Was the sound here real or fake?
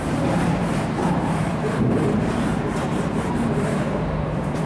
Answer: fake